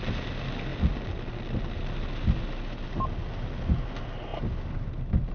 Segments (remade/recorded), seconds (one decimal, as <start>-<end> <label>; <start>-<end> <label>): 0.0-5.3 recorded